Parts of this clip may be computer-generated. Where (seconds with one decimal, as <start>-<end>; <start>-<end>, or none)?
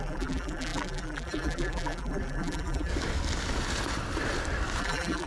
0.0-2.9; 4.8-5.3